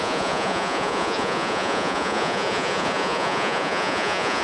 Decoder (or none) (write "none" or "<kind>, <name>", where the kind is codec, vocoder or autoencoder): vocoder, Vocos